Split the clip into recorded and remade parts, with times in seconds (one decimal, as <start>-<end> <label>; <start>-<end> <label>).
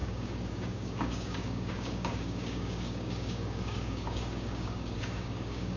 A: 0.0-5.8 remade